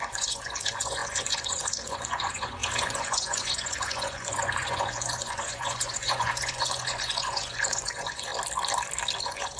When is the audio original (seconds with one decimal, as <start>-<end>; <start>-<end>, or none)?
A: 8.3-9.2